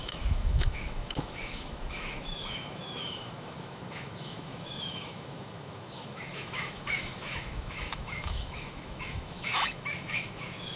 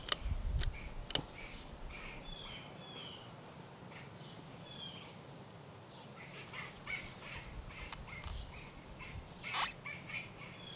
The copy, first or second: first